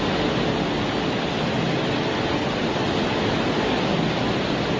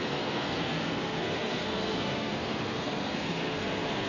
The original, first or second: first